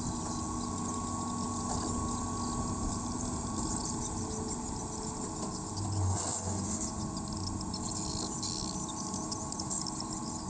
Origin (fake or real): real